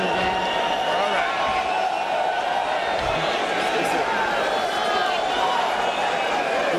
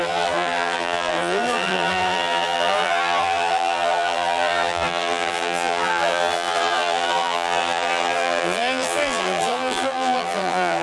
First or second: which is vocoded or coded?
second